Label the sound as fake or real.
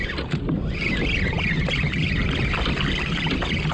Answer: real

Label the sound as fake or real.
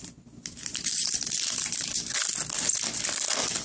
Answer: real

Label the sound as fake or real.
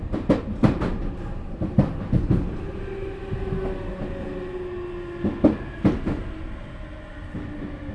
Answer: real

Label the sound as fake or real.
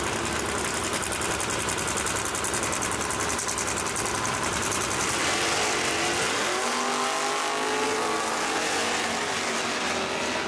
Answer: real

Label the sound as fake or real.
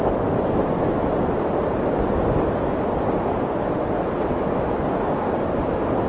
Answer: real